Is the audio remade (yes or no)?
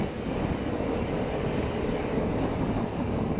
yes